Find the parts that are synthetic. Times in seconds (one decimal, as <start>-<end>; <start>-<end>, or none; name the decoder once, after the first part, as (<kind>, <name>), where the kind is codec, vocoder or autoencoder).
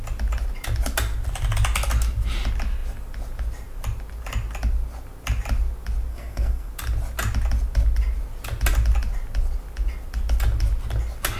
6.1-6.7 (codec, SNAC)